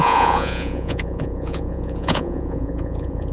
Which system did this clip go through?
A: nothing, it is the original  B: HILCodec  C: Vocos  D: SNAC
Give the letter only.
C